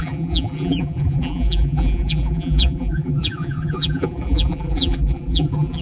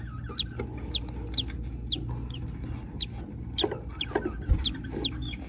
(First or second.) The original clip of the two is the second